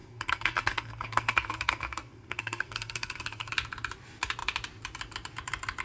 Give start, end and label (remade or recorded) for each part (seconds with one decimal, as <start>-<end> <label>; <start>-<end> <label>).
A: 0.0-3.5 remade; 3.5-5.8 recorded

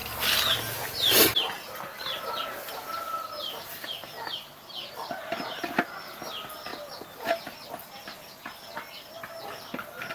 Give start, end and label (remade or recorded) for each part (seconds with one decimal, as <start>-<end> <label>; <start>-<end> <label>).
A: 0.0-10.1 recorded

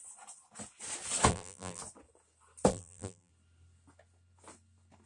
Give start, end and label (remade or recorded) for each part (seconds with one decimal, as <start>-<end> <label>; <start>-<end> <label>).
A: 0.0-1.3 recorded; 1.3-1.8 remade; 1.8-2.7 recorded; 2.7-3.3 remade; 3.3-5.1 recorded

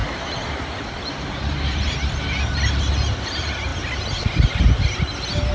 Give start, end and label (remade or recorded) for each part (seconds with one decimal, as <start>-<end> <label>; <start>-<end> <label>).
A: 0.0-1.9 remade; 1.9-5.5 recorded